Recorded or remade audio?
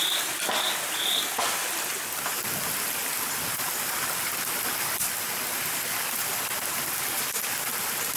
recorded